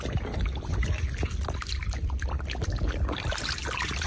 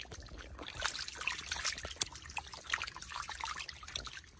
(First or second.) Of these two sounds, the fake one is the first